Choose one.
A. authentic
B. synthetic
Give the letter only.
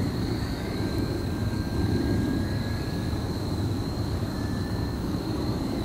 B